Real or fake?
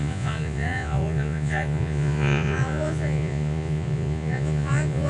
fake